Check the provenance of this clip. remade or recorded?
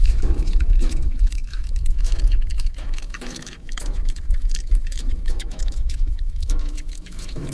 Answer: remade